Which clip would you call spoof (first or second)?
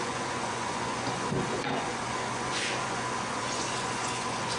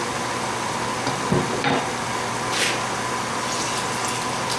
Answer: first